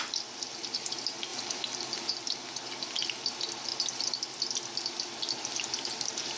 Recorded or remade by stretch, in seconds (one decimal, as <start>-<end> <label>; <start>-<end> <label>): 0.0-6.4 recorded